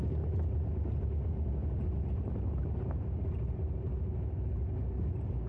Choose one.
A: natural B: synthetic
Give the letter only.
A